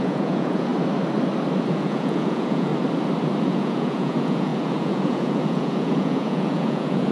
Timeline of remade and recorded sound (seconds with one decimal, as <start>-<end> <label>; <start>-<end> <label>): 0.0-0.7 remade; 0.7-1.7 recorded; 1.7-2.7 remade; 2.7-3.4 recorded; 3.4-7.1 remade